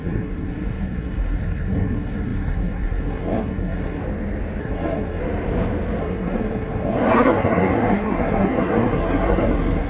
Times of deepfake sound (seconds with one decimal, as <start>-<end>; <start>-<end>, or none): 0.0-4.0; 4.6-5.2; 6.0-9.9